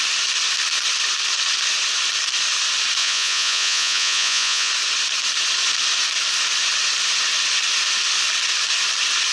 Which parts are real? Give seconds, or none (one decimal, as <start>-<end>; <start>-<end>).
0.0-3.0; 4.7-9.3

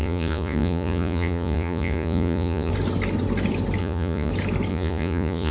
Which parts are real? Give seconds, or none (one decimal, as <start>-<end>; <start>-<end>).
2.7-3.8; 4.3-4.7